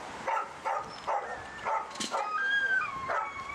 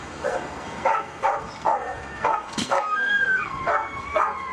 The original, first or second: first